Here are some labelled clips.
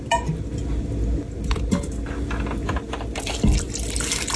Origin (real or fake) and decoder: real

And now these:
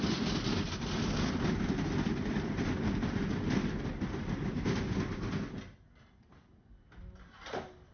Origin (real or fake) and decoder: real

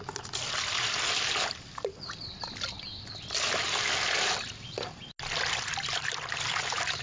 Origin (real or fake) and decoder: real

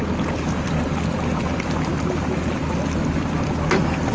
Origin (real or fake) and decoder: real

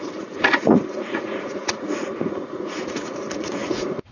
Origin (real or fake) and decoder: fake, vocoder, Vocos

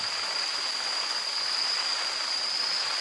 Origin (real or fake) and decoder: real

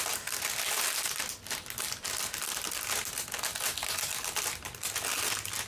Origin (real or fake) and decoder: real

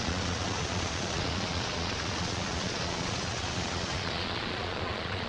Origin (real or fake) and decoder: fake, vocoder, Vocos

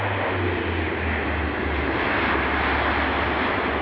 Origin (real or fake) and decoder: real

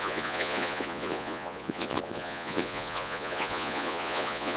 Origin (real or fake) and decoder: fake, vocoder, Vocos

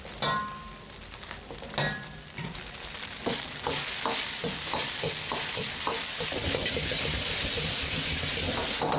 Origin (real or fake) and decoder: real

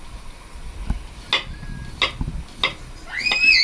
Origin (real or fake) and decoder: real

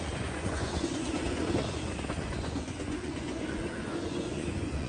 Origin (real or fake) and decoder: fake, vocoder, Vocos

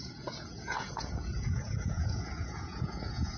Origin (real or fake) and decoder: fake, vocoder, Vocos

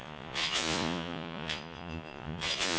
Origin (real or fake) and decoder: fake, vocoder, Vocos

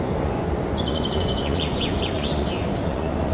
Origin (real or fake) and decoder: fake, vocoder, Vocos